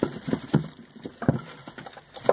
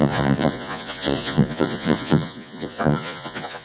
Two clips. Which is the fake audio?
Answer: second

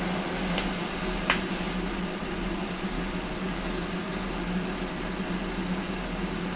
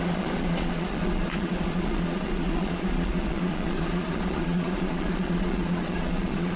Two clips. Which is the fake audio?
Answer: second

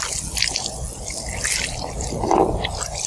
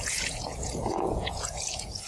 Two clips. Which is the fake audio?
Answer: second